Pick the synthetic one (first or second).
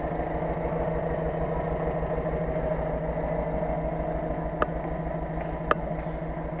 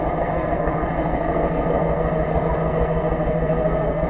second